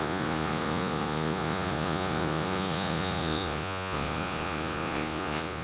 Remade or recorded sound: remade